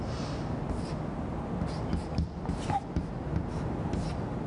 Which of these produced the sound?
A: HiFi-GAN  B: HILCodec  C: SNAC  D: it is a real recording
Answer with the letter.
D